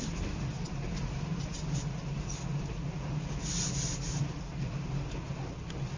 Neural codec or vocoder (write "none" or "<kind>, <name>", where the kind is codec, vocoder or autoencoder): none